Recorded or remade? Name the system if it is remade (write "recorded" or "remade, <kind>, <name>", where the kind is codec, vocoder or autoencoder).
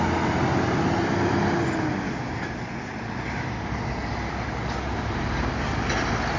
recorded